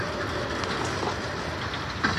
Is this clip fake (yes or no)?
no